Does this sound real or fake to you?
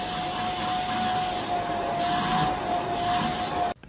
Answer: real